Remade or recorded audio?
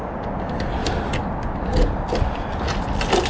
recorded